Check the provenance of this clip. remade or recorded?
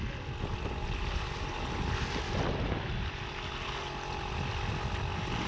recorded